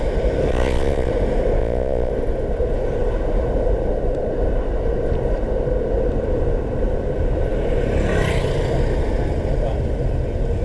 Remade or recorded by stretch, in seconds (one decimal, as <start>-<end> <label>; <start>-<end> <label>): 0.0-0.5 recorded; 0.5-1.1 remade; 1.1-1.6 recorded; 1.6-2.1 remade; 2.1-10.6 recorded